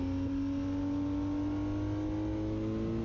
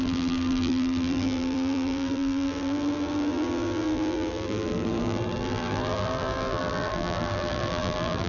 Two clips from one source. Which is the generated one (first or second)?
second